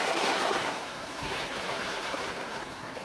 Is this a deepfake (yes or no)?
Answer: yes